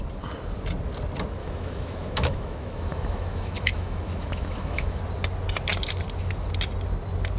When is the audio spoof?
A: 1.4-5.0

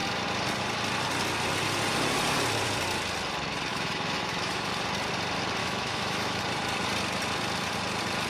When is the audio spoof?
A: 3.7-4.7; 5.6-6.4

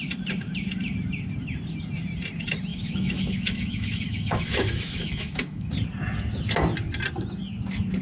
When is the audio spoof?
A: 2.7-5.7

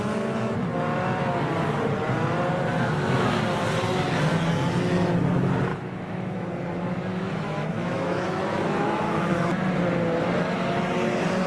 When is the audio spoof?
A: 2.7-3.3; 5.7-6.5; 7.1-9.8

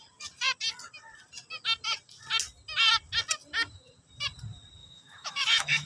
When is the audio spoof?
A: 4.8-5.9

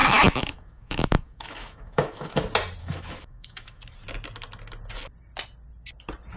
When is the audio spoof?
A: 0.0-2.4; 2.8-3.8